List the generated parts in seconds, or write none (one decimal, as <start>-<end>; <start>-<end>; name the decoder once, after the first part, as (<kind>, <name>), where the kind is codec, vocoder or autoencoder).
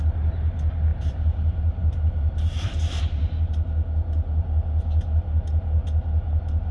0.9-3.5 (vocoder, BigVGAN v2)